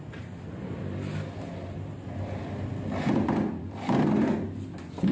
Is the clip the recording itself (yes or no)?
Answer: yes